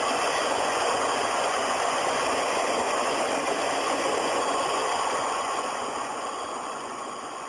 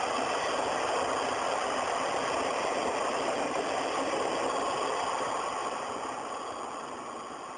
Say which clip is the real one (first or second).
second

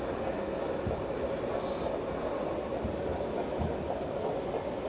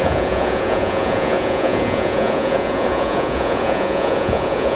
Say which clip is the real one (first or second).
first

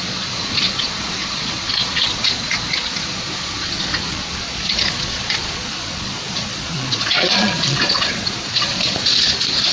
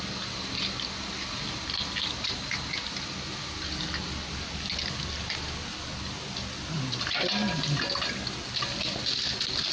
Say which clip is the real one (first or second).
second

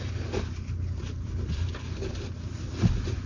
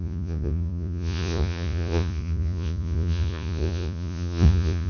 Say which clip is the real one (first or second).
first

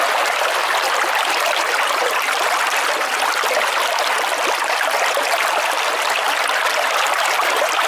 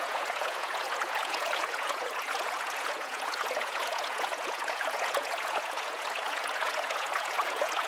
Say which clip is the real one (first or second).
first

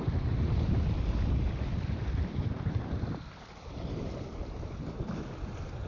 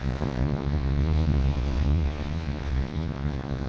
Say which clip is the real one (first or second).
first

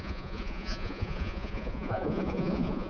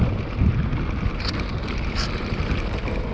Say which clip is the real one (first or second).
second